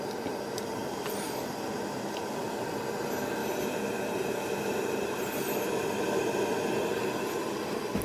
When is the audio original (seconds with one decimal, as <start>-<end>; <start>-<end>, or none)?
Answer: 0.0-0.8; 1.6-8.0